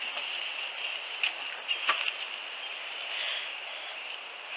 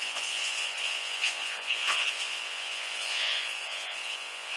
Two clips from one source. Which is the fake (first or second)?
second